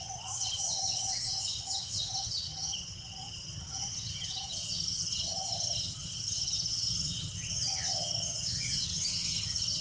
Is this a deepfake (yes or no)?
yes